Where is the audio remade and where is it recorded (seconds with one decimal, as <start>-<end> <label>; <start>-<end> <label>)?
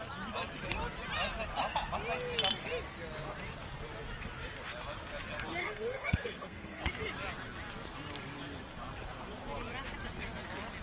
0.0-5.6 recorded; 5.6-6.8 remade; 6.8-10.8 recorded